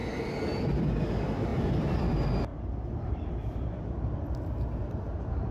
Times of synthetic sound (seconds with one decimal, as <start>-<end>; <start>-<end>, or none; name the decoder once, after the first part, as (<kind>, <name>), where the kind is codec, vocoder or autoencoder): 1.5-2.1 (vocoder, BigVGAN v2); 2.5-4.2